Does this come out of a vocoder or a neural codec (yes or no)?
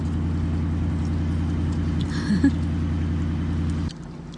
no